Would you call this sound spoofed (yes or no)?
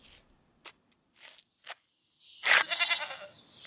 no